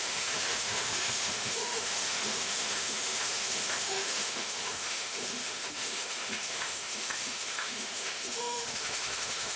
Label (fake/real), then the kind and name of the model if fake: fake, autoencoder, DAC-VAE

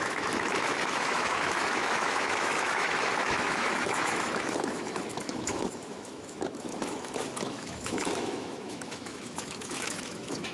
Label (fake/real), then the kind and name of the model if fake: fake, autoencoder, DAC-VAE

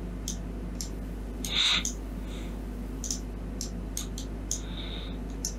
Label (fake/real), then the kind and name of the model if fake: real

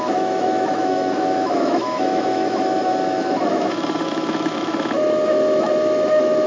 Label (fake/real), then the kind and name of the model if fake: fake, autoencoder, DAC-VAE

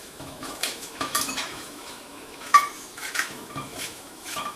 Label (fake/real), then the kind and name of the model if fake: fake, autoencoder, DAC-VAE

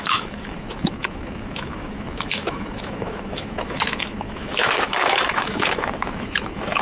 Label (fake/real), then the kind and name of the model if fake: fake, autoencoder, DAC-VAE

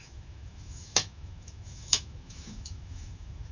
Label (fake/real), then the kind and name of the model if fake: fake, autoencoder, DAC-VAE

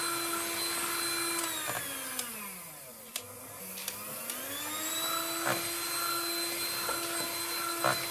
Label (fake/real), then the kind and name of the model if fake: real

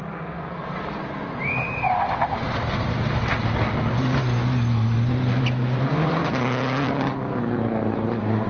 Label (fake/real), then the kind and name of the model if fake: real